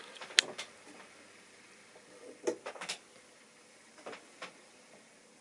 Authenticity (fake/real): real